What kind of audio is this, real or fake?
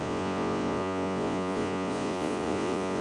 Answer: fake